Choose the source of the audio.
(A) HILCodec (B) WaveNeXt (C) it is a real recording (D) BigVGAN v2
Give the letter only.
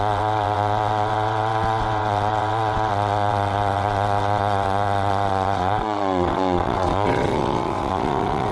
B